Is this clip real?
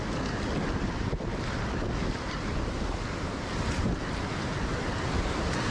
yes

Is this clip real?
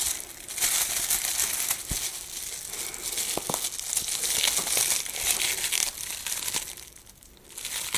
yes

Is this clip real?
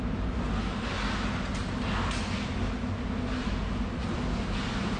yes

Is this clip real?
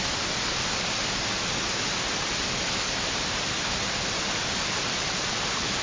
yes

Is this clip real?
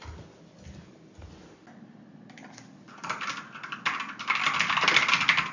yes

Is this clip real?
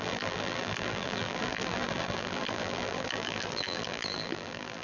no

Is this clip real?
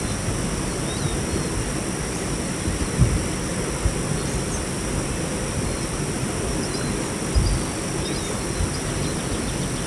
yes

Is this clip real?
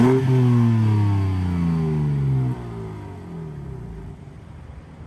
yes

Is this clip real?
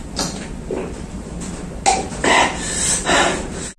yes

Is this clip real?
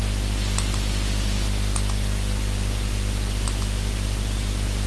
no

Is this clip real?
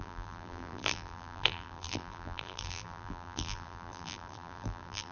no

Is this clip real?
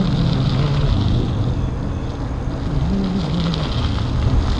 yes